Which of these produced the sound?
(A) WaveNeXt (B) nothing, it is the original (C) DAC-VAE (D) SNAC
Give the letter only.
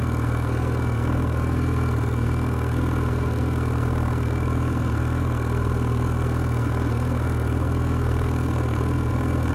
D